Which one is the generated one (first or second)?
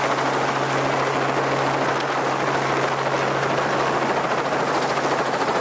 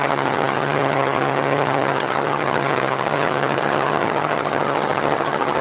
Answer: second